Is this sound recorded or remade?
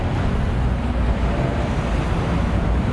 recorded